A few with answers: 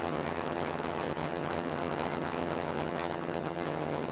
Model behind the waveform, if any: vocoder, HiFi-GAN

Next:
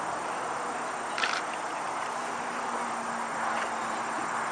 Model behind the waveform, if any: none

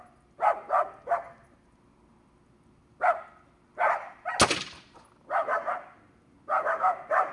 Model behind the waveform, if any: none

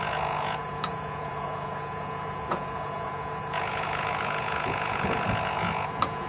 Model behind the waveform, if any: vocoder, Vocos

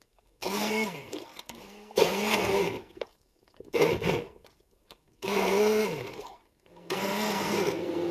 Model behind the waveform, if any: codec, SNAC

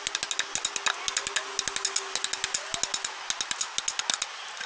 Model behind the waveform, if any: none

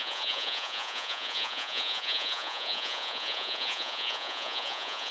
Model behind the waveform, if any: vocoder, Vocos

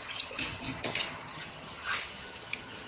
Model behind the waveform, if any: vocoder, HiFi-GAN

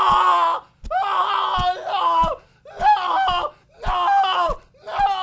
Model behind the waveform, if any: none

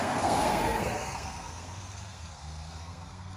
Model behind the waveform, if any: codec, SNAC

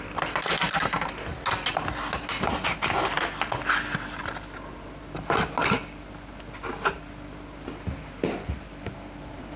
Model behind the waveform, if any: none